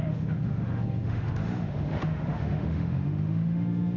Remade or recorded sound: remade